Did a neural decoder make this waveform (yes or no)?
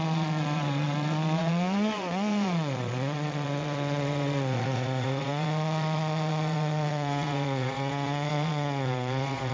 yes